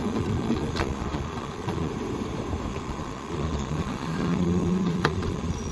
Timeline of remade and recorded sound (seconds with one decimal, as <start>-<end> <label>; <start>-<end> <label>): 0.0-1.9 remade; 1.9-2.7 recorded; 2.7-5.7 remade